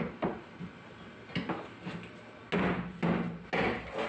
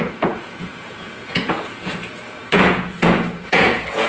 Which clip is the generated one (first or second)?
second